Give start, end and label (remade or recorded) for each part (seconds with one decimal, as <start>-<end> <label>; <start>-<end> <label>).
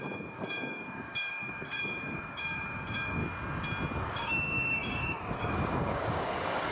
0.0-3.2 remade; 3.2-4.0 recorded; 4.0-6.7 remade